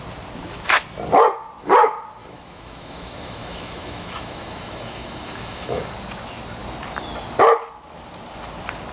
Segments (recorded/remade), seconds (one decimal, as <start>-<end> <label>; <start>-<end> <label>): 0.0-2.2 recorded; 2.2-5.8 remade; 5.8-8.9 recorded